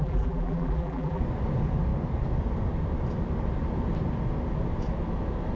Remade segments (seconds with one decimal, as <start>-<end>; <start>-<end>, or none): 0.0-1.2